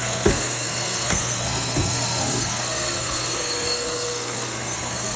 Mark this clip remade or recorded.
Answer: remade